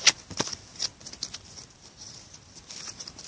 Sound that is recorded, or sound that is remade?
recorded